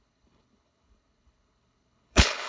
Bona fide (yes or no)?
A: no